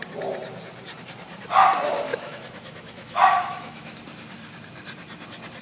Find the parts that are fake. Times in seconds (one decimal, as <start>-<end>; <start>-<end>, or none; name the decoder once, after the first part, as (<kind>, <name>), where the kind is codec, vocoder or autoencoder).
2.1-4.0 (autoencoder, DAC-VAE)